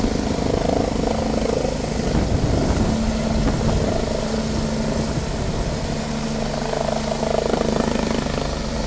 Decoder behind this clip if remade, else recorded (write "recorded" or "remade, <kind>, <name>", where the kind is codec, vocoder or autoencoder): recorded